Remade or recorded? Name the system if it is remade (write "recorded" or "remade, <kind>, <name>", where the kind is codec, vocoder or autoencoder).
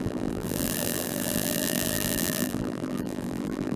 remade, vocoder, BigVGAN v2